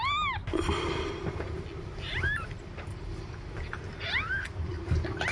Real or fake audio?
real